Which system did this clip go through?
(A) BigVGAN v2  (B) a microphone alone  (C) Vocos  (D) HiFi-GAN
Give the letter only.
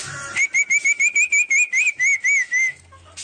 B